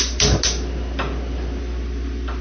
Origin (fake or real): real